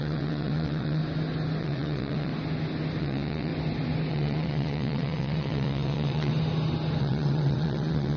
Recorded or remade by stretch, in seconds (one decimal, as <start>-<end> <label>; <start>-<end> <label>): 0.0-1.0 remade; 1.0-1.6 recorded; 1.6-2.3 remade; 2.3-3.0 recorded; 3.0-3.5 remade; 3.5-4.1 recorded; 4.1-6.3 remade; 6.3-7.0 recorded; 7.0-8.2 remade